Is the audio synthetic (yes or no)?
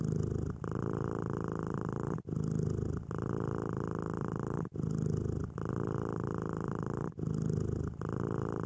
no